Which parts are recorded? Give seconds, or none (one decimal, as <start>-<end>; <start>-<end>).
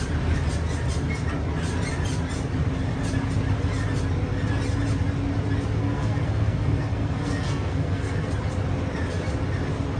0.0-5.8; 8.3-10.0